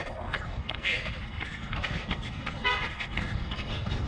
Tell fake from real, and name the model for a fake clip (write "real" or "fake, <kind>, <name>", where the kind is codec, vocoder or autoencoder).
fake, codec, SNAC